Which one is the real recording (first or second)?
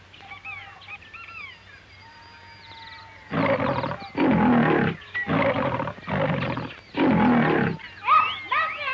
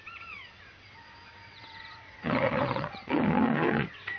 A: first